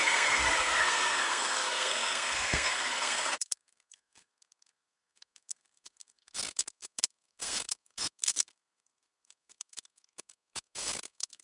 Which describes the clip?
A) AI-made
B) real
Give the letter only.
A